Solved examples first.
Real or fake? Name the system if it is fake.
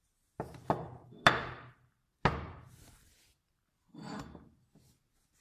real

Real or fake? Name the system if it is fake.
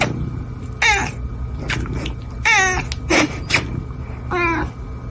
real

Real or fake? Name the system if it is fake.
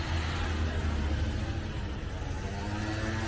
real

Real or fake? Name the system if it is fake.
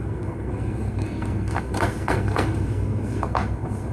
fake, codec, SNAC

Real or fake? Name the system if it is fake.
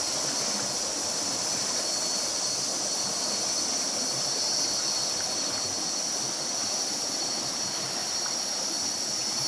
real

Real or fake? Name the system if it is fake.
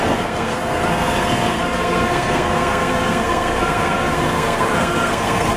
fake, codec, SNAC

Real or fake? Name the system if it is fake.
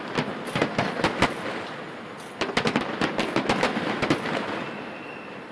real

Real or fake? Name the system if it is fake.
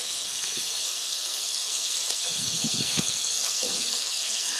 fake, codec, SNAC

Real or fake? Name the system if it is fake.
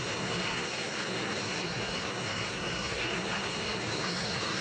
fake, codec, SNAC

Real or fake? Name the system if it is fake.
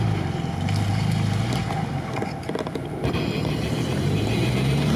real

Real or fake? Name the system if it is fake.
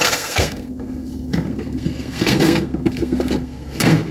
fake, codec, SNAC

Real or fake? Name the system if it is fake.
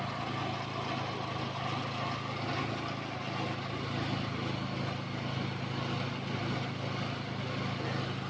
real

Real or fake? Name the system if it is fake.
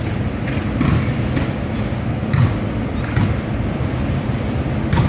real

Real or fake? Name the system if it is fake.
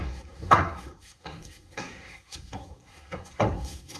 fake, codec, SNAC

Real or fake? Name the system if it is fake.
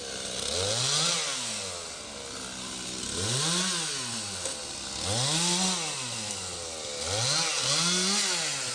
real